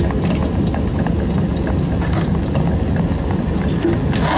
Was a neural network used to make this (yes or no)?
no